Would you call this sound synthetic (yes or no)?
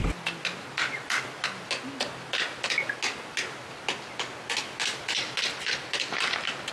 no